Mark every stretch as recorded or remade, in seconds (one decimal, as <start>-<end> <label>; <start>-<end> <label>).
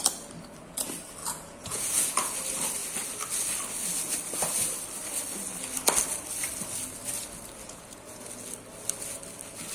0.0-1.2 recorded; 1.2-2.4 remade; 2.4-7.6 recorded; 7.6-8.3 remade; 8.3-9.7 recorded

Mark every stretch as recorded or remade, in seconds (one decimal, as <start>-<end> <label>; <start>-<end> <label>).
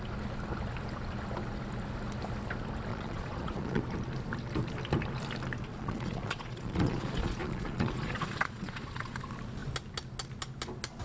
0.0-2.9 recorded; 2.9-3.8 remade; 3.8-5.7 recorded; 5.7-9.2 remade; 9.2-11.0 recorded